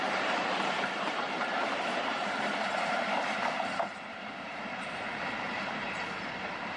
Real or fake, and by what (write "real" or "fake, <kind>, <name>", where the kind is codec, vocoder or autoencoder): fake, vocoder, BigVGAN v2